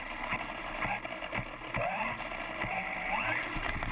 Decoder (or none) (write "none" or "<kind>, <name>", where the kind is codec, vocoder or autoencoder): vocoder, BigVGAN v2